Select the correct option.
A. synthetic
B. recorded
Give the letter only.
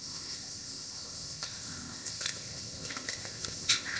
A